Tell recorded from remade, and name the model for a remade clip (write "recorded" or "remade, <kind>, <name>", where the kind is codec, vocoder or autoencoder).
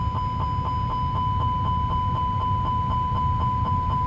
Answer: recorded